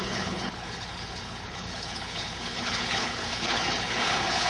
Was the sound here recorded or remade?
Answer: remade